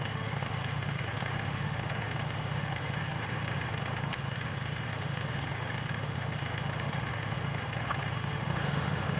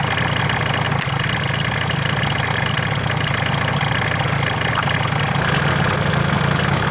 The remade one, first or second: first